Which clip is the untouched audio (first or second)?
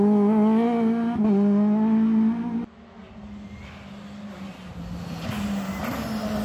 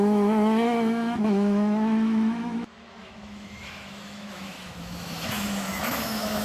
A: first